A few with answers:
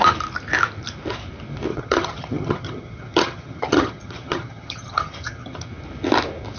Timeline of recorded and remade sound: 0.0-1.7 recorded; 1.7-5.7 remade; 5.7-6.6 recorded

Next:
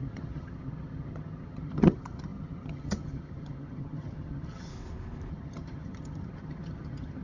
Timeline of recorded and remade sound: 0.0-4.7 remade; 4.7-5.3 recorded; 5.3-7.2 remade